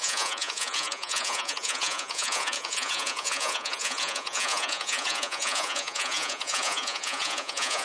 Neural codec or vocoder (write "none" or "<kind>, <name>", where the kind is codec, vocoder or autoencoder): vocoder, Vocos